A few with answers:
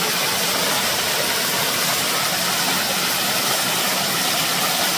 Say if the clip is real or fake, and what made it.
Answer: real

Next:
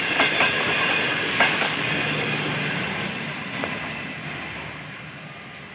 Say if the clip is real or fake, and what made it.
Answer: real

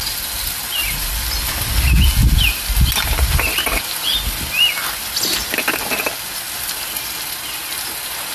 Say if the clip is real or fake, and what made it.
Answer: real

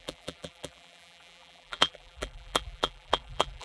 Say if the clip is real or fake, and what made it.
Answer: fake, vocoder, BigVGAN v2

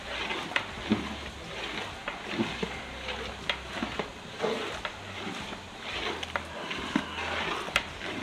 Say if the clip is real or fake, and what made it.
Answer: real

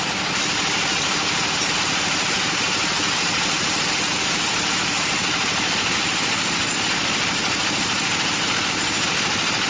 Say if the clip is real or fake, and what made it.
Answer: fake, vocoder, BigVGAN v2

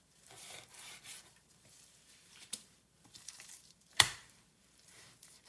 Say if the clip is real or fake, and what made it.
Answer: fake, vocoder, BigVGAN v2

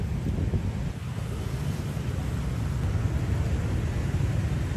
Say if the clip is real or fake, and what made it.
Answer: real